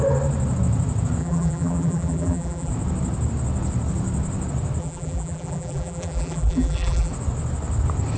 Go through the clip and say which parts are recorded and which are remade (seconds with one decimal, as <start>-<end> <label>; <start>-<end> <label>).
0.0-1.2 recorded; 1.2-2.7 remade; 2.7-4.8 recorded; 4.8-7.1 remade; 7.1-8.2 recorded